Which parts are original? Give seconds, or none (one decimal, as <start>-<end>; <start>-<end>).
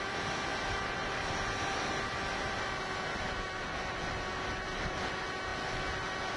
0.0-6.4